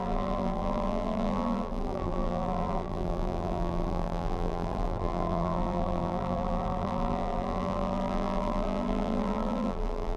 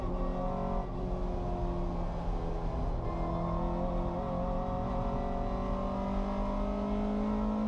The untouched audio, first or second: second